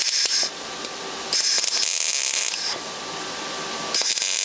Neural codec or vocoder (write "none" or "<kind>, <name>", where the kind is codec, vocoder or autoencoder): none